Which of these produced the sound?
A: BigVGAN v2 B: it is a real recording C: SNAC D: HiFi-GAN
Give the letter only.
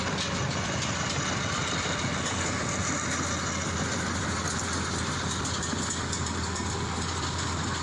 B